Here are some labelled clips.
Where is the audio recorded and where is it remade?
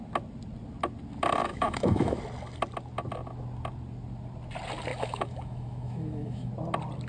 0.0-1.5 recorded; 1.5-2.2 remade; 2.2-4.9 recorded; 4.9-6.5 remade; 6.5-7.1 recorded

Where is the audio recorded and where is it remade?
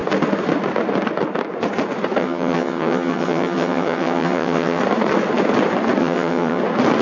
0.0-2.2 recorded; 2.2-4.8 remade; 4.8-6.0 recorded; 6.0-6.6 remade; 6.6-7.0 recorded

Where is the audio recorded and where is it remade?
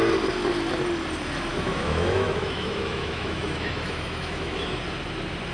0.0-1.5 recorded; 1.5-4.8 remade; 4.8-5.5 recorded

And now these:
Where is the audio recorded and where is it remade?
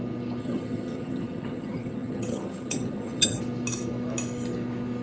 0.0-0.4 recorded; 0.4-3.4 remade; 3.4-5.0 recorded